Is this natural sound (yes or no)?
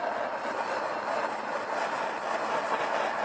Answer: yes